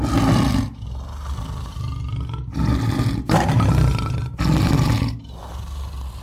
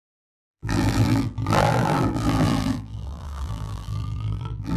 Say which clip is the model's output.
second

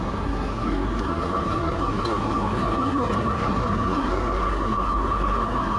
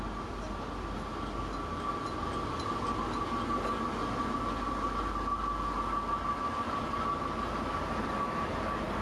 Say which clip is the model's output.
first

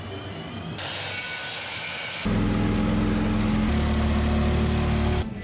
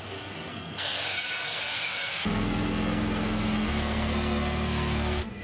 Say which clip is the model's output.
second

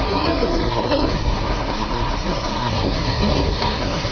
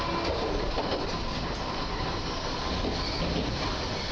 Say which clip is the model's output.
first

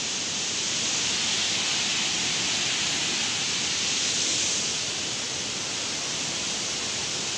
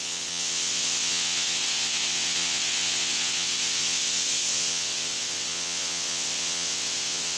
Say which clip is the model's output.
second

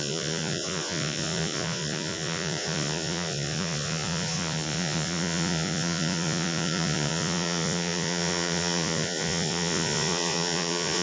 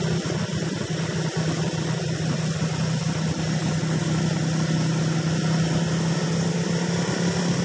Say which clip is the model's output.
first